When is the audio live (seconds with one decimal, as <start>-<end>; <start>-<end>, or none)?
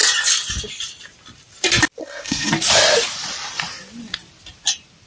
0.0-2.0; 2.5-5.1